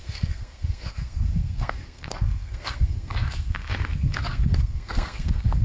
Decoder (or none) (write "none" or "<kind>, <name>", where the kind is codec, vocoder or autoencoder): codec, SNAC